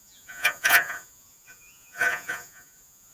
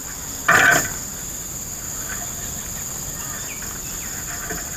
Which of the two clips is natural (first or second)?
second